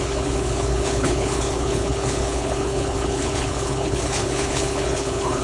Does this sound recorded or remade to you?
remade